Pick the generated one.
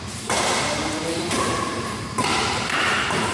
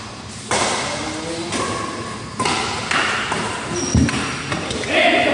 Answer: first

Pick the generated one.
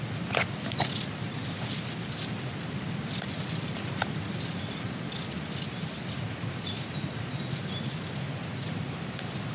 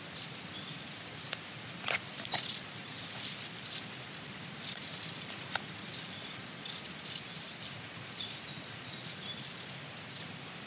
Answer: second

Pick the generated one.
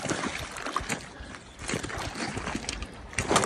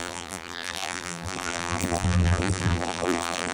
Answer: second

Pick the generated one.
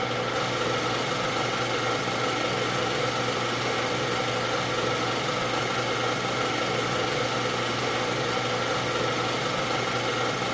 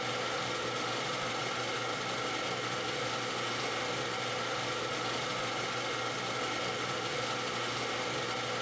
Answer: first